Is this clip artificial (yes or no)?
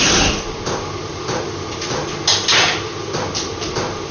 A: no